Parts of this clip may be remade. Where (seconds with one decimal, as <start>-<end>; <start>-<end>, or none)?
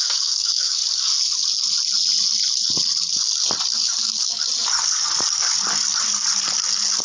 0.0-0.8; 4.0-4.4